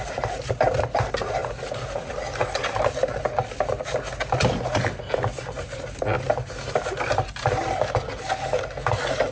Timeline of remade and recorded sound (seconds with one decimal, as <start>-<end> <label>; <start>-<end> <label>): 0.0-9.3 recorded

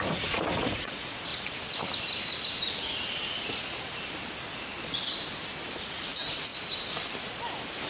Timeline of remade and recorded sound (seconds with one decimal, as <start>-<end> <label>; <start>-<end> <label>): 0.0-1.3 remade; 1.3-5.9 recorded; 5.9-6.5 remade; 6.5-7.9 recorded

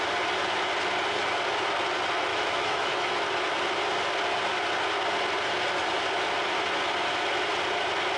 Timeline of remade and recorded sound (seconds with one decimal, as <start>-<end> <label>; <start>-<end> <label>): 0.0-2.3 recorded; 2.3-3.1 remade; 3.1-8.2 recorded